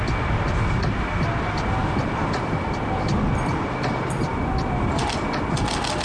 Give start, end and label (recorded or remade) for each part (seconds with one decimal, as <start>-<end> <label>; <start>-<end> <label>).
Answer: 0.0-1.8 recorded; 1.8-5.4 remade; 5.4-6.0 recorded